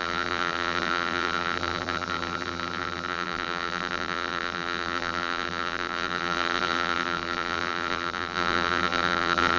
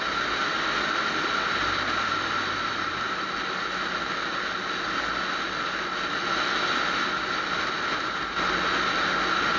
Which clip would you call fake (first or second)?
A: first